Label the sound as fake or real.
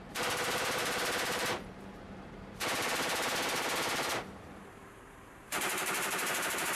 fake